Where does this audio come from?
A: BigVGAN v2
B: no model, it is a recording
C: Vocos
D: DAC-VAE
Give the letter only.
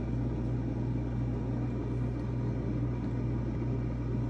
B